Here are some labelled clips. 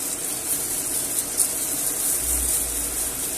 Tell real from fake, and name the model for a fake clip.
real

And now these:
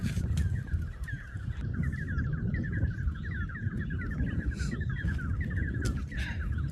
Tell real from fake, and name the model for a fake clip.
real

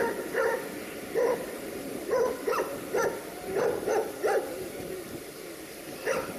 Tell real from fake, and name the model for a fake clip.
fake, vocoder, BigVGAN v2